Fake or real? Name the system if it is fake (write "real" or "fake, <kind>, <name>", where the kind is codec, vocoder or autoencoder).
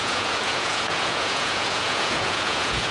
fake, vocoder, Vocos